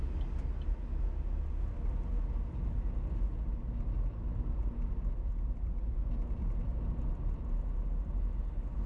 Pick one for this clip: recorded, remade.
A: recorded